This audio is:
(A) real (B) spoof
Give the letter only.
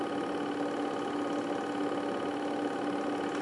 A